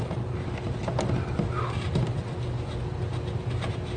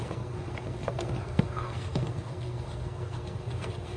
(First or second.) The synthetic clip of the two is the second